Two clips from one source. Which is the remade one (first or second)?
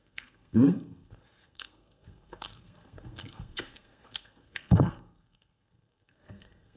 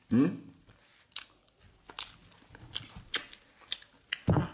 first